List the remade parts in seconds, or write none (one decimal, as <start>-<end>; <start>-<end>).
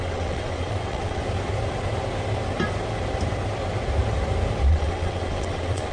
0.0-1.2; 4.7-5.9